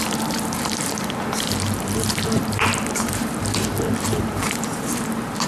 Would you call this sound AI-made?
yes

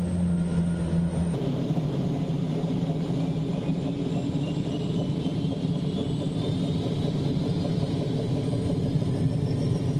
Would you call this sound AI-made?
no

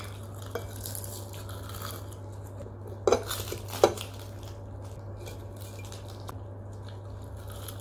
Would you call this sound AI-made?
no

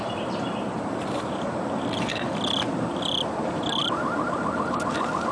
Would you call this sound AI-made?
yes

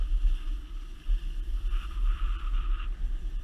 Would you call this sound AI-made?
yes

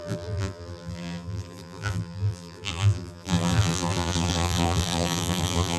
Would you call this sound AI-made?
yes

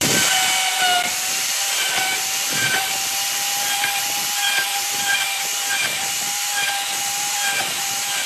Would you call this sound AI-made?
yes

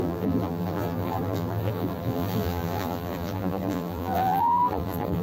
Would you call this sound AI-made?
yes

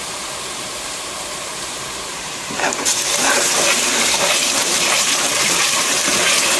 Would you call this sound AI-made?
yes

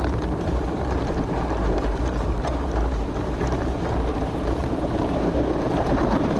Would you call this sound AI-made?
yes